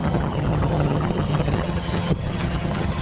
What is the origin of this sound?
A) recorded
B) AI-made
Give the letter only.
B